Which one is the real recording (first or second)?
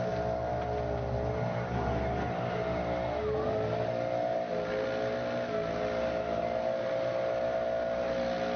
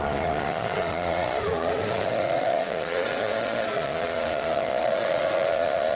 first